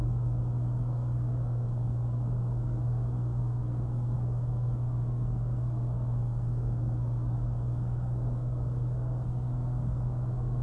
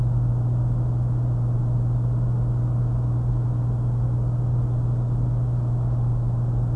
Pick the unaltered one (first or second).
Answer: second